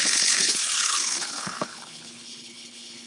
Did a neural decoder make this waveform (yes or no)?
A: yes